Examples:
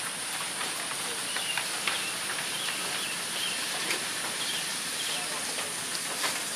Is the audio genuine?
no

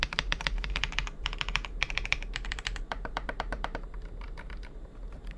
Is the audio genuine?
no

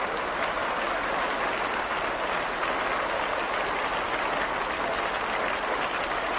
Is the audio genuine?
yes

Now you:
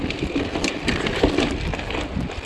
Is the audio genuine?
yes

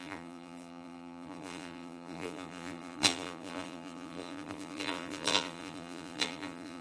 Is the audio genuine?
no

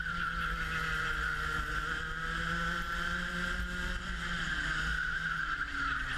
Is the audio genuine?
yes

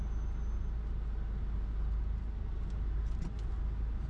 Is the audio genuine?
yes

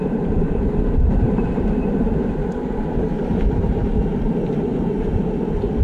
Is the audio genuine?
no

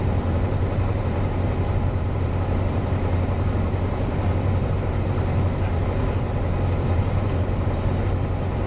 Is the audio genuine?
no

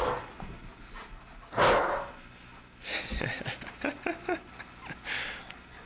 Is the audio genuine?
yes